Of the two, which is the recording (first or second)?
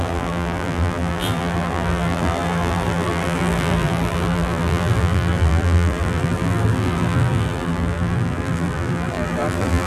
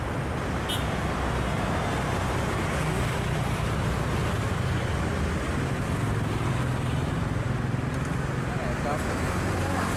second